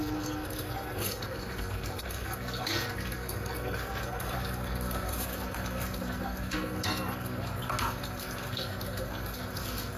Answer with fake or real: fake